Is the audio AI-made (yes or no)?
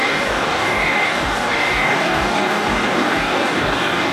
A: yes